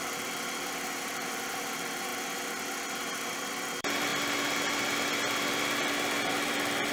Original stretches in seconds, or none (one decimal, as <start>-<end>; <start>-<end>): 2.1-3.1; 4.1-6.3